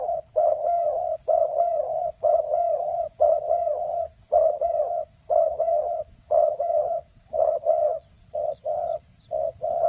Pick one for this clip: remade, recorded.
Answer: remade